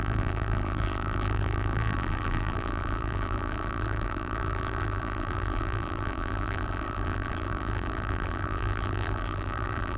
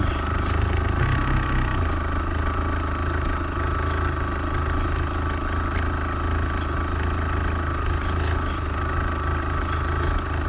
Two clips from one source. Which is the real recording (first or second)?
second